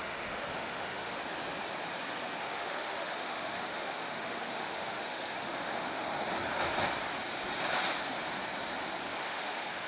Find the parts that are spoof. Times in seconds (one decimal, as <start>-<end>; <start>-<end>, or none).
0.0-1.2; 2.4-6.1; 9.2-9.9